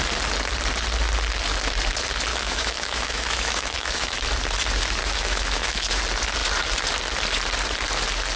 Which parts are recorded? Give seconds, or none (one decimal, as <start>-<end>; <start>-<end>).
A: 0.0-2.3; 4.2-5.0; 6.0-8.4